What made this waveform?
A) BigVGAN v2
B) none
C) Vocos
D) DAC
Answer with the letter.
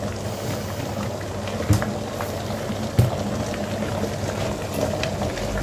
B